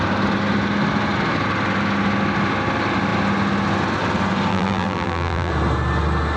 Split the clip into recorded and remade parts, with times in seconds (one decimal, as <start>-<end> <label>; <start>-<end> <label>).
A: 0.0-4.5 recorded; 4.5-5.5 remade; 5.5-6.4 recorded